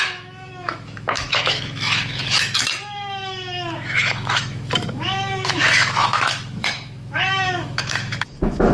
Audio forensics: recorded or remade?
remade